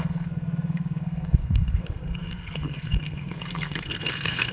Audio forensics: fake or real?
fake